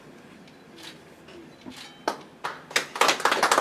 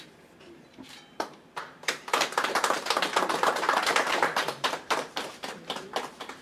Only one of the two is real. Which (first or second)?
first